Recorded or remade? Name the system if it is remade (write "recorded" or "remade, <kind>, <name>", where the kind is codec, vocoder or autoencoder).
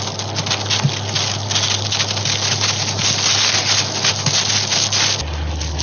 recorded